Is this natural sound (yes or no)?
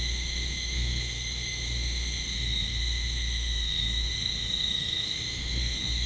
no